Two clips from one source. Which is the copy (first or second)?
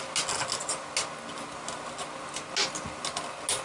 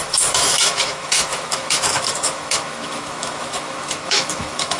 second